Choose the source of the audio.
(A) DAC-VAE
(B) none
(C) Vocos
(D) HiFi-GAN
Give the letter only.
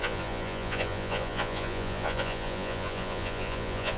C